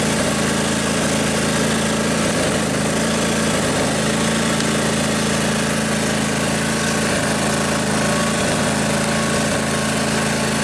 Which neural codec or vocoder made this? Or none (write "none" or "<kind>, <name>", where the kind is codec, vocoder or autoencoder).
none